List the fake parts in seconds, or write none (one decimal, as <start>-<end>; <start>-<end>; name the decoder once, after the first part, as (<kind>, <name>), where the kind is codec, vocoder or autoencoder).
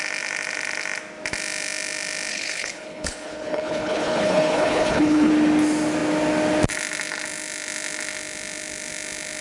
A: 2.3-5.3 (codec, HILCodec)